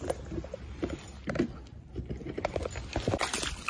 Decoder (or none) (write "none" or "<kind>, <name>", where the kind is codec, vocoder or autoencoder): none